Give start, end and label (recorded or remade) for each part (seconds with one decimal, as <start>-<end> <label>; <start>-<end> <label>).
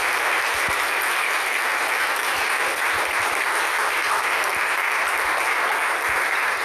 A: 0.0-6.6 remade